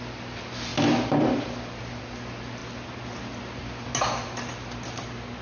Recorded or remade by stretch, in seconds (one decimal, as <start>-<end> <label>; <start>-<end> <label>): 0.0-5.4 recorded